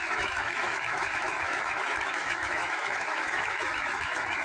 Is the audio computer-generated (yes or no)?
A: yes